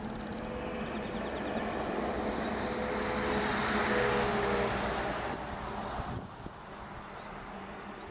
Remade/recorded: recorded